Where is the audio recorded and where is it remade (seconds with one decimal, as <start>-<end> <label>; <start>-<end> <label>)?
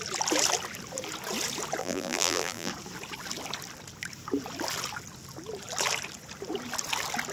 0.0-1.8 recorded; 1.8-2.7 remade; 2.7-7.3 recorded